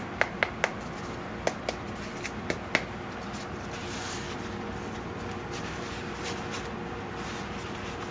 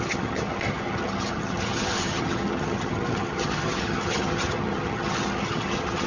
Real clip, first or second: first